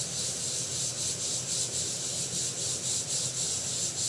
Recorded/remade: recorded